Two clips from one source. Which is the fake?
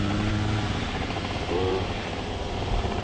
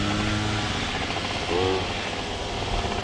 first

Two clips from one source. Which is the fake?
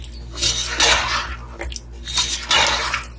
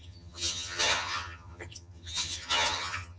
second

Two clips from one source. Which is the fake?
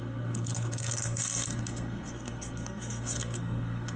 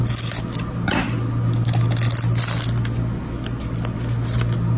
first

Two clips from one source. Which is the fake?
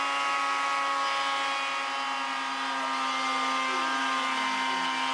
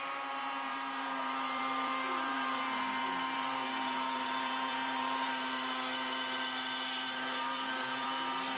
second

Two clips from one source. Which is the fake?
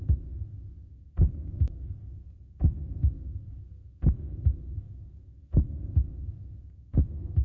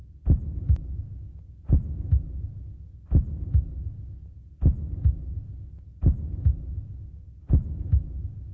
first